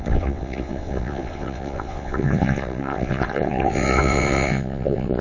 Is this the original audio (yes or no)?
no